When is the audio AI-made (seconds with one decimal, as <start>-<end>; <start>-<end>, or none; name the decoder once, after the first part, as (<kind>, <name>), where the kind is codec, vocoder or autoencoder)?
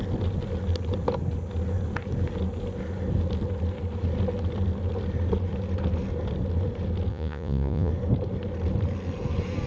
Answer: 7.1-7.9 (vocoder, Vocos)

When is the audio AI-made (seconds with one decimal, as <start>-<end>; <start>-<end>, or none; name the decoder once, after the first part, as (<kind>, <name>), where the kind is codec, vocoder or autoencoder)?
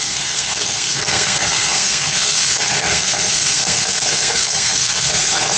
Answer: 0.0-5.6 (codec, SNAC)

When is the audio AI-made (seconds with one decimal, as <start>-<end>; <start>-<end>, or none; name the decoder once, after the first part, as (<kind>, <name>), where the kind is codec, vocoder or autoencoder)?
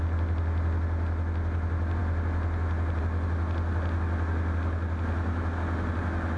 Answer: none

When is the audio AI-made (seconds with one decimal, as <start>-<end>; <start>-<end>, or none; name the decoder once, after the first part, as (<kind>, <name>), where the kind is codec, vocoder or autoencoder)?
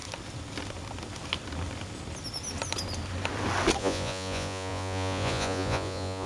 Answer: 3.8-6.3 (vocoder, Vocos)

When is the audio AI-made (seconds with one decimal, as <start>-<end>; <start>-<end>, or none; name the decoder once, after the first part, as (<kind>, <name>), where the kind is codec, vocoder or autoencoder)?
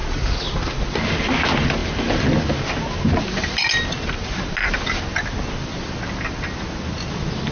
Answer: none